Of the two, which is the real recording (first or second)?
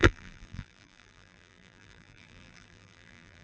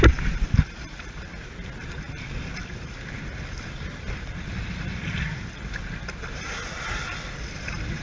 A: second